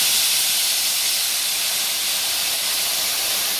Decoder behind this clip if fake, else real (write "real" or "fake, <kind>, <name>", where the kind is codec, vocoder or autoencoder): real